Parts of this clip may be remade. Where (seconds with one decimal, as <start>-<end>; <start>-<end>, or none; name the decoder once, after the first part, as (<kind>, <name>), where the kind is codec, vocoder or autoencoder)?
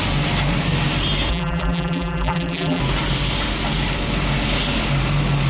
1.3-2.8 (vocoder, BigVGAN v2)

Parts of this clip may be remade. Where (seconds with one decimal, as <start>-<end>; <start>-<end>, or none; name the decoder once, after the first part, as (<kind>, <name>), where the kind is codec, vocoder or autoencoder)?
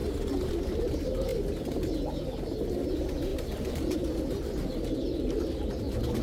none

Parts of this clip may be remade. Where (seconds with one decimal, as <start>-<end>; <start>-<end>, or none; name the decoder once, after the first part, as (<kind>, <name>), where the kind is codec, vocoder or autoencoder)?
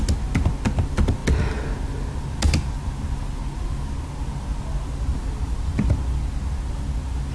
5.1-5.9 (vocoder, BigVGAN v2)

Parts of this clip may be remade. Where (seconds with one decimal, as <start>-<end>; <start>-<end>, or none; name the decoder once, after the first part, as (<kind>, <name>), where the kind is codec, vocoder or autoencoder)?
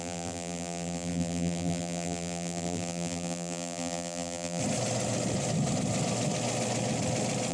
0.0-4.6 (vocoder, BigVGAN v2)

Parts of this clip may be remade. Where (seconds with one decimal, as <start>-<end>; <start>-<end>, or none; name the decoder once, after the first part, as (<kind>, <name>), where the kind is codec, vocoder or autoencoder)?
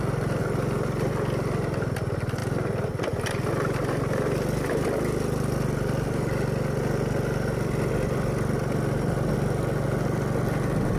none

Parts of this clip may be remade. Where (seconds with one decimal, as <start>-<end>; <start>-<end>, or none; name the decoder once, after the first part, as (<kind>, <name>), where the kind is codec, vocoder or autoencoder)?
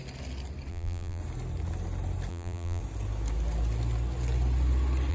0.7-1.2 (vocoder, BigVGAN v2); 2.3-2.8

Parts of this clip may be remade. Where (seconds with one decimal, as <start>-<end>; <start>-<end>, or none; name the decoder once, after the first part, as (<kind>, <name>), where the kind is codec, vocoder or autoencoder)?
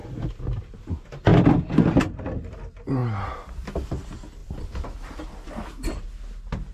0.0-0.6 (vocoder, BigVGAN v2); 1.3-2.0; 4.4-5.7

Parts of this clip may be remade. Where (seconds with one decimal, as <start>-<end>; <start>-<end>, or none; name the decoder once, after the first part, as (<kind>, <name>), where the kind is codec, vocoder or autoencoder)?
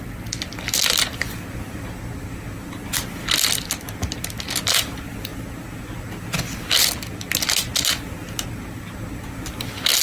none